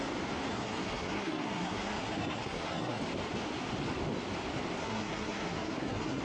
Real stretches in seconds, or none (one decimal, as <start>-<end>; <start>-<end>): 0.0-0.5; 3.0-4.8